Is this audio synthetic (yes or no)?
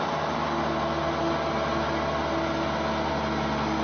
no